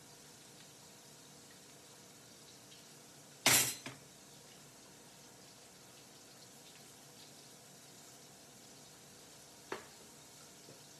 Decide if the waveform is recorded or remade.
recorded